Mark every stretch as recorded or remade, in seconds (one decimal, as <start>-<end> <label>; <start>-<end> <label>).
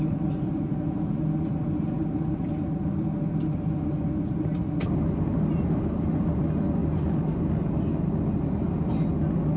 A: 0.0-9.6 recorded